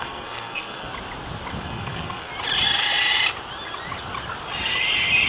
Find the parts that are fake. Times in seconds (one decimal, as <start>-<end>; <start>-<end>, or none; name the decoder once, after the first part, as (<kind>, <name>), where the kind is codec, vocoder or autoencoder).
0.0-0.9 (codec, SNAC); 1.6-2.3